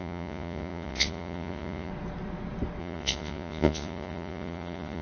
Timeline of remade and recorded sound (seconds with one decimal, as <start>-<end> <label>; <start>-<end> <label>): 0.0-1.9 remade; 1.9-2.8 recorded; 2.8-5.0 remade